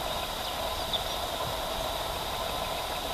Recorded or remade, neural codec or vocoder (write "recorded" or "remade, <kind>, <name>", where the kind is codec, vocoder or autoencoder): recorded